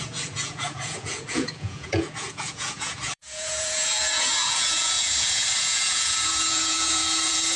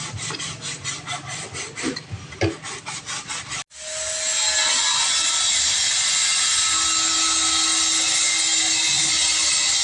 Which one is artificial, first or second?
first